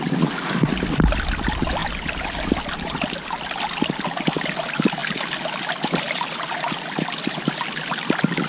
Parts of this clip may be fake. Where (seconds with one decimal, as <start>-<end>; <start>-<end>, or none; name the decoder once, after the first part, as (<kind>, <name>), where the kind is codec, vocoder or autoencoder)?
none